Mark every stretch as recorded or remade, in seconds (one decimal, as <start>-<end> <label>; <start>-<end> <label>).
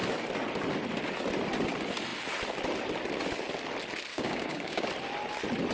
0.0-4.1 recorded; 4.1-4.9 remade; 4.9-5.7 recorded